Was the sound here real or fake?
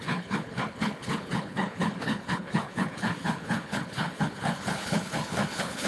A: fake